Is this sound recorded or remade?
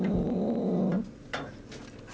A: recorded